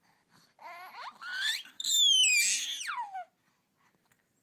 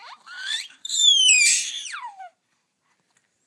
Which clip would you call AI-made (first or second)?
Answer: second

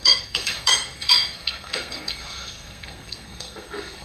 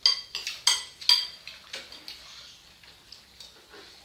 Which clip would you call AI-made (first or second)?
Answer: first